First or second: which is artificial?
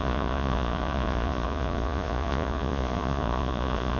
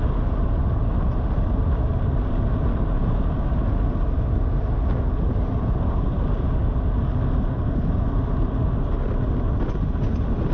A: first